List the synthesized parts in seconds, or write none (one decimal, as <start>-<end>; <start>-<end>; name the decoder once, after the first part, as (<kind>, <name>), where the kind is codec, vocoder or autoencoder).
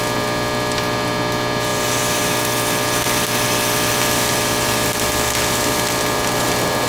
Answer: none